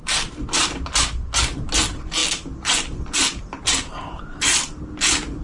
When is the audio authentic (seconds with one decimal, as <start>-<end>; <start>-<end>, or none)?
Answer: 0.0-5.4